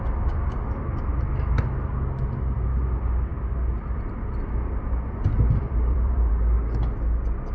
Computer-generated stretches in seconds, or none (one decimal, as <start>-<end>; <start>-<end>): 3.3-6.3